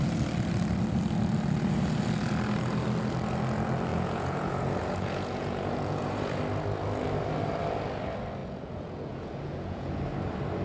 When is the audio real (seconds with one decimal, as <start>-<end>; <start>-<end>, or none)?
0.0-3.9; 6.4-8.4; 10.0-10.6